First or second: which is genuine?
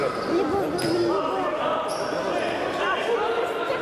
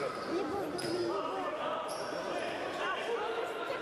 first